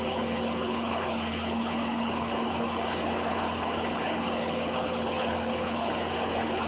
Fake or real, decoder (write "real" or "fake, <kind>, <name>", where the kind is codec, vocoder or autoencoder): fake, codec, HILCodec